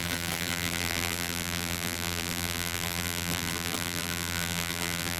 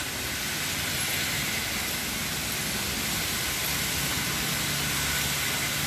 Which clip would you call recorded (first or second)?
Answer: second